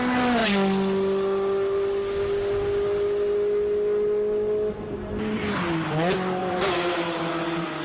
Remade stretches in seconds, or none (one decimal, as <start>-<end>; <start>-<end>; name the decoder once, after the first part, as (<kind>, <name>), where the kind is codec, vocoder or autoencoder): 6.4-7.2 (vocoder, BigVGAN v2)